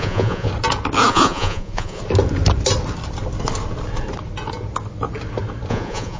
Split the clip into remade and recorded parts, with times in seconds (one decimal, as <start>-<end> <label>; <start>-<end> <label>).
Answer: 0.0-0.5 remade; 0.5-1.1 recorded; 1.1-2.0 remade; 2.0-5.7 recorded; 5.7-6.2 remade